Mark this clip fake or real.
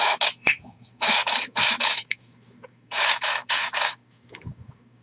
fake